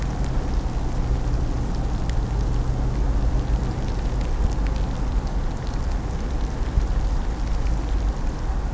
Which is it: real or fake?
real